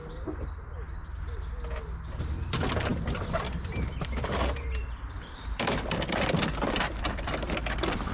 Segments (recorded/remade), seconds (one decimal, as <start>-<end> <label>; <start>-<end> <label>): 0.0-2.3 recorded; 2.3-8.1 remade